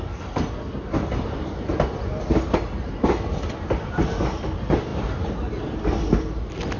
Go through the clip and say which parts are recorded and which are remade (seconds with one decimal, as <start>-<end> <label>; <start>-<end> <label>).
0.0-6.8 recorded